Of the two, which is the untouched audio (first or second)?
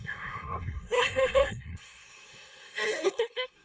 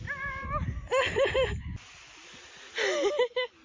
second